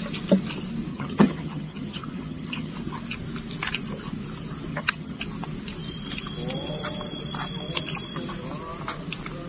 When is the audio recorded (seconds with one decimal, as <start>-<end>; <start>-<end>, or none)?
0.0-0.9; 2.7-4.7; 5.2-9.5